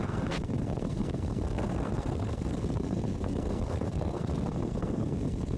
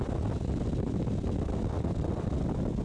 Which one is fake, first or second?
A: first